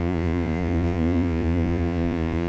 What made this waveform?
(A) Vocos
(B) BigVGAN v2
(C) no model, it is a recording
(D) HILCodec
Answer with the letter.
A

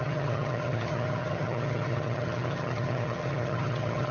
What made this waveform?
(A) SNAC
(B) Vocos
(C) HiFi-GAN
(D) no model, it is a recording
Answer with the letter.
C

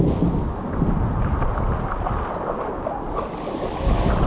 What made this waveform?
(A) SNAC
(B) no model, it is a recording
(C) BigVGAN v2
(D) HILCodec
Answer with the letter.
B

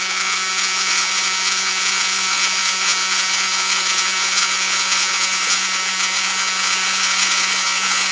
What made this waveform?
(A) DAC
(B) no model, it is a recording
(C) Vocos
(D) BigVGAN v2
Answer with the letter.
C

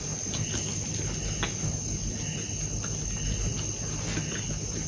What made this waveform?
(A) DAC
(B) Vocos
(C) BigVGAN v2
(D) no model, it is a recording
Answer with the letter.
D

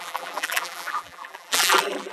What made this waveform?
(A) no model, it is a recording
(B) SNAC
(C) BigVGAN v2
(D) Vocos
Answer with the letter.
C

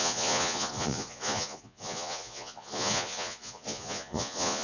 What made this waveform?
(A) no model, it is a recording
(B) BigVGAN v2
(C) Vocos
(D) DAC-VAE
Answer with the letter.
C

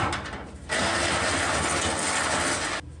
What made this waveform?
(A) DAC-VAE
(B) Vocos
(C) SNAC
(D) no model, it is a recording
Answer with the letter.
D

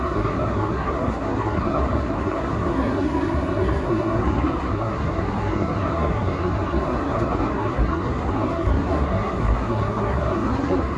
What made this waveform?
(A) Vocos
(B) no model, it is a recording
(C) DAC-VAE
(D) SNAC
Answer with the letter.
D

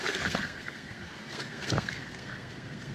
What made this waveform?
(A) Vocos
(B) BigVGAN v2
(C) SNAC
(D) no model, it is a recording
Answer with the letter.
C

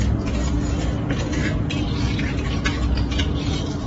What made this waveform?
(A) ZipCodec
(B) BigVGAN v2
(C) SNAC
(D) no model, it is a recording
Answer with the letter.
D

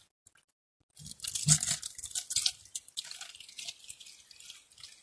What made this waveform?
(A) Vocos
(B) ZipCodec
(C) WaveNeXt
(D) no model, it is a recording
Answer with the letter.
D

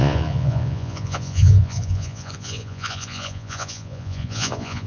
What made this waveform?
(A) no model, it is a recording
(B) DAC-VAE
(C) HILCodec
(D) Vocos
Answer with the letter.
D